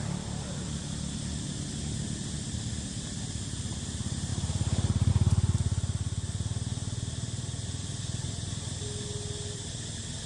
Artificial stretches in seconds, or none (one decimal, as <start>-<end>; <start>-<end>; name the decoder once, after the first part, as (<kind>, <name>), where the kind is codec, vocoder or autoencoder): 4.3-5.1 (vocoder, BigVGAN v2)